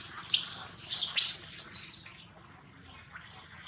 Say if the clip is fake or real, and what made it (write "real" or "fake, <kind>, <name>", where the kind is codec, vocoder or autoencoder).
real